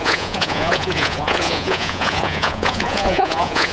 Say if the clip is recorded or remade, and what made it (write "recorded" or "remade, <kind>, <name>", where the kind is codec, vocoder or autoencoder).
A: remade, vocoder, Vocos